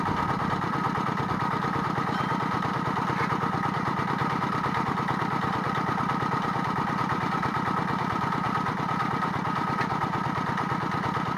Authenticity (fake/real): fake